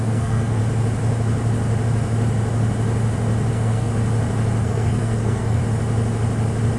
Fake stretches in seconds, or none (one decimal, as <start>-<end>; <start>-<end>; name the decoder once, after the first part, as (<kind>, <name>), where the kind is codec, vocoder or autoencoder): 0.0-0.6 (codec, SNAC); 3.5-3.9; 4.6-5.6